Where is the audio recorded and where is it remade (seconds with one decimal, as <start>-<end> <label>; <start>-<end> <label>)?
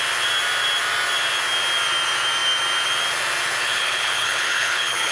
0.0-3.6 recorded; 3.6-5.1 remade